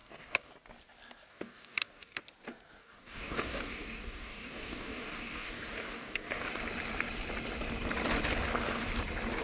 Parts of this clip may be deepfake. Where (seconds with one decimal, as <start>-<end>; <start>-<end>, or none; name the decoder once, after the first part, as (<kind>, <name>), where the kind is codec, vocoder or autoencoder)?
0.0-0.5 (codec, DAC); 1.3-2.2; 2.8-6.5